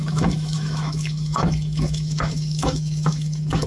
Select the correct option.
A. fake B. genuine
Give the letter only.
A